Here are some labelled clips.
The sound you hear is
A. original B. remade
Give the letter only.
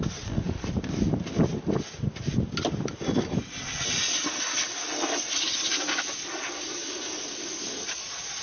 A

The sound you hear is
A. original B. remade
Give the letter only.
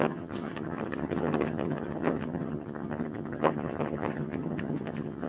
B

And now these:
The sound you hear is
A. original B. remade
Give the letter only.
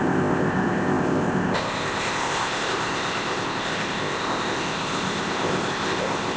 B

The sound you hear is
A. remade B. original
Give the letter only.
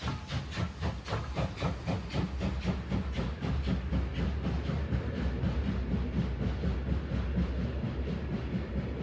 B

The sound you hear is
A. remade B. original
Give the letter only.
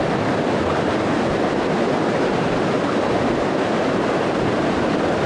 B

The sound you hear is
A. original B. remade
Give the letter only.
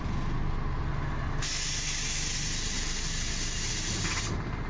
A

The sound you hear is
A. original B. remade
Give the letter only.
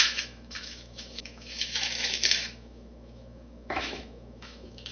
B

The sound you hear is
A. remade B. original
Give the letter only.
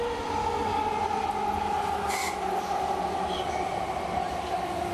B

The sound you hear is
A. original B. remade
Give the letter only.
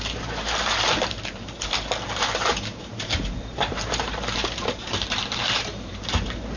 B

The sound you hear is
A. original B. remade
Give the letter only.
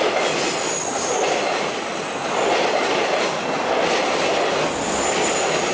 A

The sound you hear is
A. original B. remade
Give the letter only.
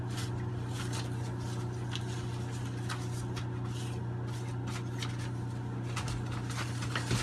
A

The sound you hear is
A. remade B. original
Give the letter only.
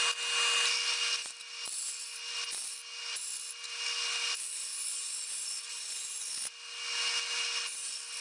B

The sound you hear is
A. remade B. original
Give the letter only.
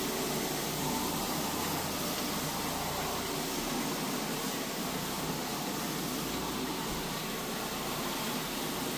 B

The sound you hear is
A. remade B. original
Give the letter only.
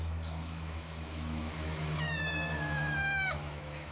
A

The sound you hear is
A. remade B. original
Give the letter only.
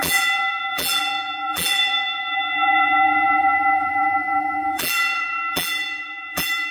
A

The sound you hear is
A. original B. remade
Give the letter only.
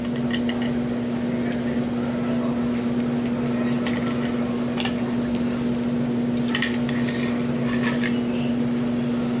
A